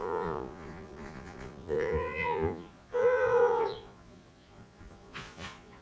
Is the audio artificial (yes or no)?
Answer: yes